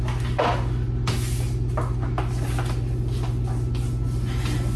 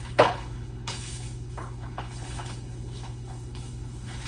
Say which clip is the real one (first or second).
first